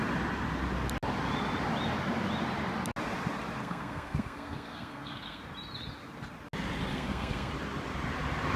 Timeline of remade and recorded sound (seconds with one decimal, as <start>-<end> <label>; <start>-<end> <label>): 0.0-3.6 recorded; 3.6-5.4 remade; 5.4-6.9 recorded; 6.9-7.5 remade; 7.5-8.6 recorded